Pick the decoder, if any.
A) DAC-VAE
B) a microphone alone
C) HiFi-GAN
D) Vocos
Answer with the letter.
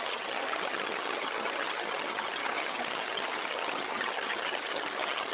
C